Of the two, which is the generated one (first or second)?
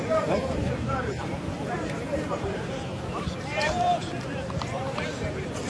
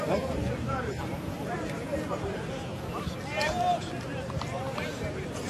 first